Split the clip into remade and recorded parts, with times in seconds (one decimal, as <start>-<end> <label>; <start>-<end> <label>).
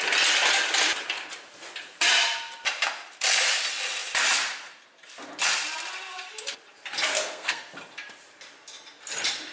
0.0-7.1 recorded; 7.1-7.6 remade; 7.6-9.5 recorded